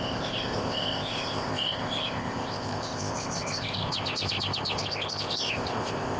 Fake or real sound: fake